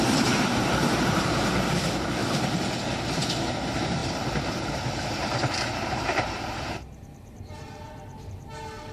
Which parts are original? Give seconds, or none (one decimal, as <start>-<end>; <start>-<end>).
2.2-3.6

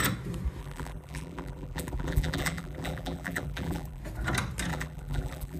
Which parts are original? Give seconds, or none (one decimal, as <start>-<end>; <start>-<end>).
0.0-0.6; 4.0-4.7

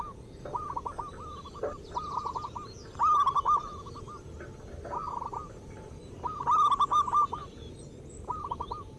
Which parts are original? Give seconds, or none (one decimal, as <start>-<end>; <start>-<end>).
0.0-9.0

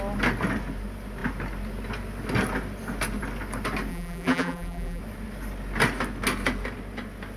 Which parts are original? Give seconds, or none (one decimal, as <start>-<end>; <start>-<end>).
0.0-3.9; 5.0-7.4